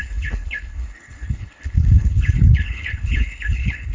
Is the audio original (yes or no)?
no